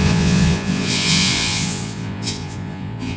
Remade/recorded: remade